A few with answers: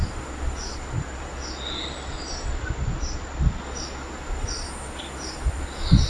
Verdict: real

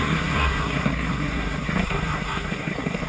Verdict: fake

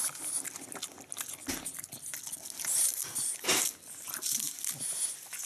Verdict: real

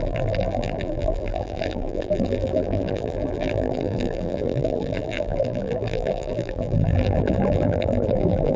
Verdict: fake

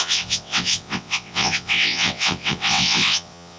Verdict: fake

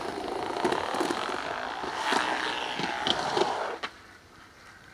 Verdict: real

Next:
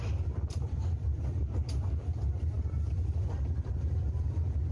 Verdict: fake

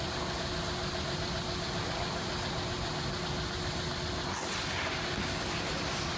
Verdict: real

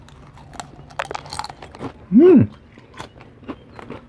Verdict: real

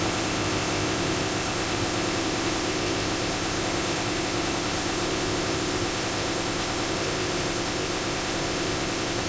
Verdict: fake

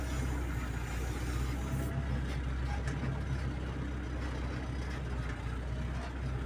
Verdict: real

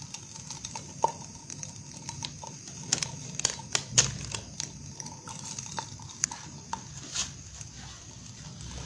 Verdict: real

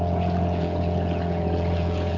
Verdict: fake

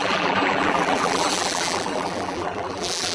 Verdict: fake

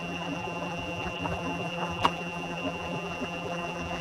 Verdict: fake